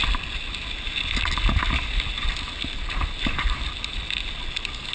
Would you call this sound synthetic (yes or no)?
no